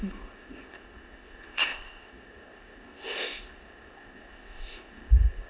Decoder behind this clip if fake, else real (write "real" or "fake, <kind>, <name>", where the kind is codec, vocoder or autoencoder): fake, codec, ZipCodec